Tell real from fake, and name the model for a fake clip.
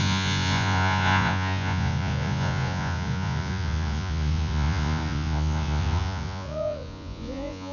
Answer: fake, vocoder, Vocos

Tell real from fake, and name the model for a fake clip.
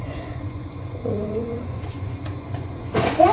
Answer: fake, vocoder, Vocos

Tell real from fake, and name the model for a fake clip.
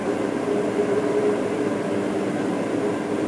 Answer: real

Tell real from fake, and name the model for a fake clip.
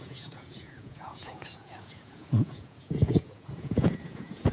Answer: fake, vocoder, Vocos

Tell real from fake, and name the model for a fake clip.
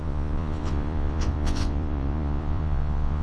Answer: fake, vocoder, Vocos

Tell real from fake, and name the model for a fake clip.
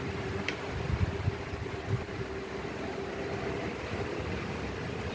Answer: real